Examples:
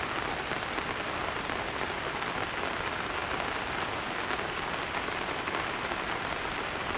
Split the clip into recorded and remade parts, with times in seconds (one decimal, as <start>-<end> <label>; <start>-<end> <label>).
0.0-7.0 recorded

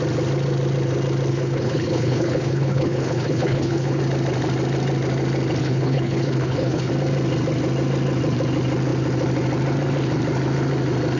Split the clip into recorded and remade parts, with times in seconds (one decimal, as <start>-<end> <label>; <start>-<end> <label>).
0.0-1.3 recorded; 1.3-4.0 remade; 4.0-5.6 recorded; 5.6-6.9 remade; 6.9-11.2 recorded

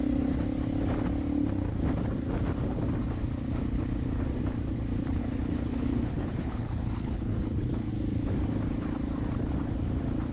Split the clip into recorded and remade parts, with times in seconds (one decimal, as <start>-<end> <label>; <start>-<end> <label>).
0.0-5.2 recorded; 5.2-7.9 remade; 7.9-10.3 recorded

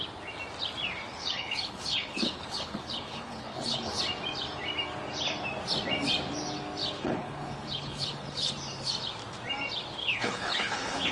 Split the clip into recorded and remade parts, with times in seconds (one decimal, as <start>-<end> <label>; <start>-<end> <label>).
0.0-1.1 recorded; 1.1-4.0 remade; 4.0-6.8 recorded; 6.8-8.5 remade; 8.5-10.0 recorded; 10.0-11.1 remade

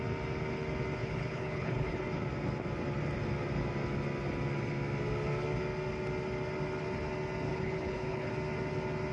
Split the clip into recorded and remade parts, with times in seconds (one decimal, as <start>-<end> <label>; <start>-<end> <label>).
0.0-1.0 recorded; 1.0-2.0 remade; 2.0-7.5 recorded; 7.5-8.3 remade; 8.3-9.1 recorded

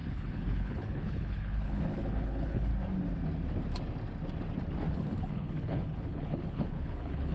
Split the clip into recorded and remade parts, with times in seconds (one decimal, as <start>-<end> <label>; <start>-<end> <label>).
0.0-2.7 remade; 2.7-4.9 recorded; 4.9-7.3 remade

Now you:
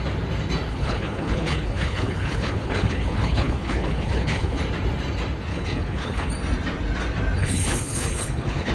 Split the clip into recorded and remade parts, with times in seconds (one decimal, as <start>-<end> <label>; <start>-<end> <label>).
0.0-0.7 recorded; 0.7-4.6 remade; 4.6-5.5 recorded; 5.5-6.3 remade; 6.3-7.4 recorded; 7.4-8.7 remade

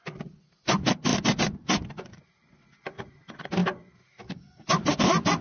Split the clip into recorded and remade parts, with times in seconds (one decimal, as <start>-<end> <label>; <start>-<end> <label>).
0.0-5.4 recorded